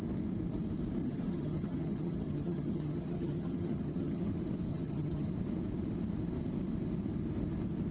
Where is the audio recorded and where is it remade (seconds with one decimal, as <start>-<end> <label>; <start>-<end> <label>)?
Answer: 0.0-1.0 recorded; 1.0-4.3 remade; 4.3-4.7 recorded; 4.7-5.3 remade; 5.3-7.9 recorded